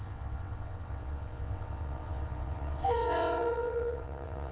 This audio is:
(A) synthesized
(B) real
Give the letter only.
A